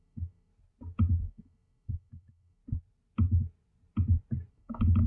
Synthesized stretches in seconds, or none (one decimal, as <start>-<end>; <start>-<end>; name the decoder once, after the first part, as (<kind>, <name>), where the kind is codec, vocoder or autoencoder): 0.0-0.5 (autoencoder, DAC-VAE); 1.1-2.6; 4.5-5.1